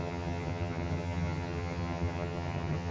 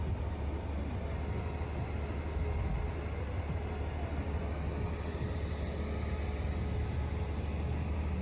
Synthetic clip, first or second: first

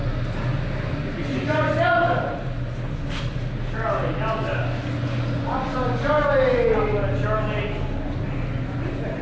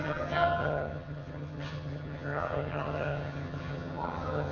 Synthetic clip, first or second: second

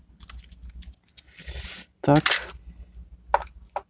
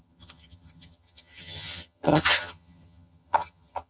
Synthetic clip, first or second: second